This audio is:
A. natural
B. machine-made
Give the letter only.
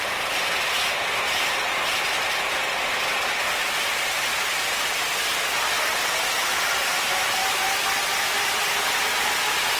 A